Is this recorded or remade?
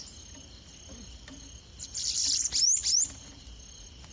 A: remade